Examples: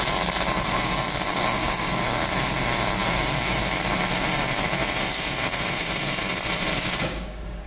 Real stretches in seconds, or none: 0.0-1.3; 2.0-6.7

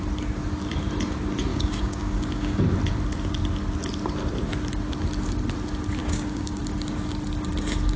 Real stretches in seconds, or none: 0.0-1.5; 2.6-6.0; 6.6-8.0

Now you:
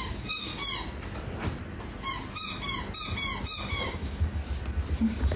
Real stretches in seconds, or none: 0.5-3.7; 4.4-5.0

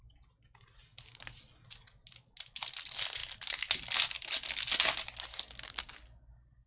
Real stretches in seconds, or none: 0.0-6.7

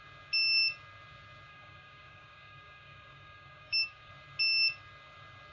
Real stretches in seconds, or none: 0.0-1.5; 4.1-5.5